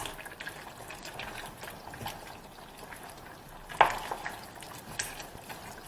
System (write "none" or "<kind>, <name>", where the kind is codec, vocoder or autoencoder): none